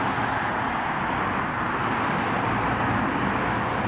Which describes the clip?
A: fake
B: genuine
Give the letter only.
B